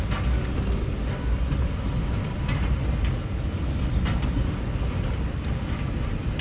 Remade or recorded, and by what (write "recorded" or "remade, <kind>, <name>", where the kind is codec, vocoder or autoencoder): recorded